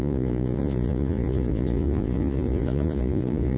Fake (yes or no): yes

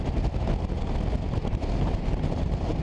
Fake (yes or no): no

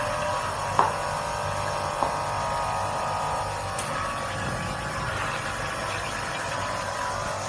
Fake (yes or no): no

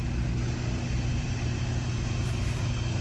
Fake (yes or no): no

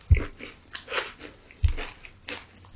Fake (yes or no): no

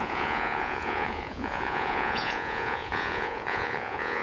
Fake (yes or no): yes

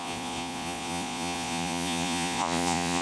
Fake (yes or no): yes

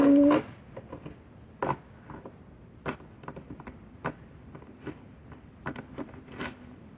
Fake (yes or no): no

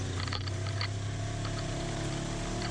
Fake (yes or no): no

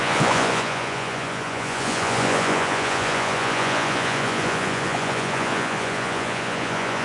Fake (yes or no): yes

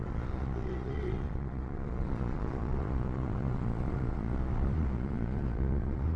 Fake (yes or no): yes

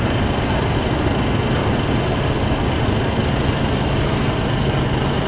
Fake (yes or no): no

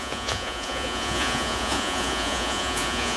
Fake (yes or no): yes